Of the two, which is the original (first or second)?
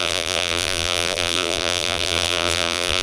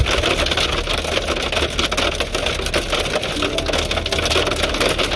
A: second